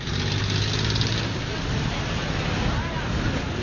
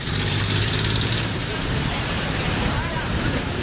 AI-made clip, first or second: second